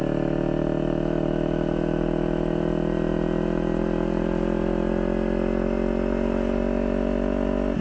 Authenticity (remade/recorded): recorded